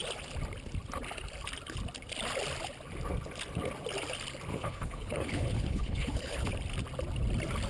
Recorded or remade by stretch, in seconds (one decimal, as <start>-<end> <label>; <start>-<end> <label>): 0.0-4.5 recorded; 4.5-6.5 remade; 6.5-7.7 recorded